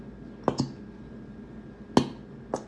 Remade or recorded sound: recorded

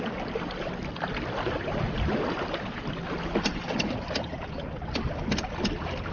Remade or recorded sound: recorded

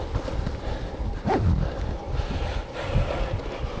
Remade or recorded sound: recorded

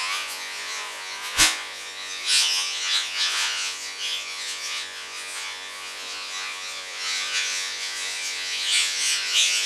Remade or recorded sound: remade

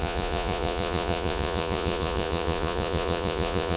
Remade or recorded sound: remade